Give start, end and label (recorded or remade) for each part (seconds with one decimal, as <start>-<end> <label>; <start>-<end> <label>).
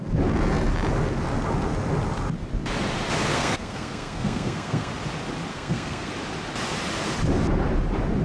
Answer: 0.0-3.3 recorded; 3.3-4.9 remade; 4.9-5.5 recorded; 5.5-6.1 remade; 6.1-8.2 recorded